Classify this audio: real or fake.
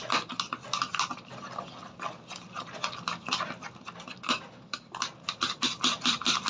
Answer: real